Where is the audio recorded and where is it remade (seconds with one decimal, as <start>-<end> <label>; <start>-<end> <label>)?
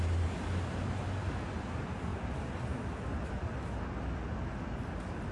0.0-5.3 recorded